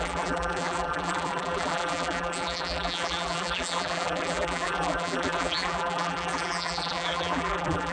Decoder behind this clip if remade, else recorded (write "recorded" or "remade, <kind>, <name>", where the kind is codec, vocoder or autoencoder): remade, vocoder, BigVGAN v2